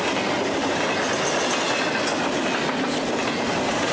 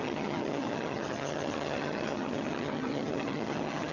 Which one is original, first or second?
first